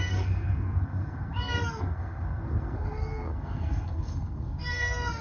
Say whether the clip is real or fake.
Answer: fake